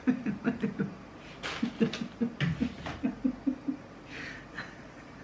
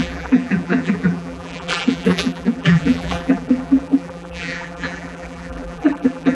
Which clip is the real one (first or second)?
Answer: first